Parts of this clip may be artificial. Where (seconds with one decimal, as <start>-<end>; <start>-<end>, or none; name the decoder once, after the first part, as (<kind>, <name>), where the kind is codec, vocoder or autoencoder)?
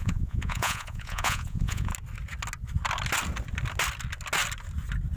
0.0-1.9 (vocoder, Vocos)